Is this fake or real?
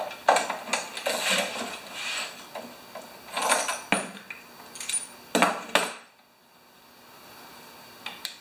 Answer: real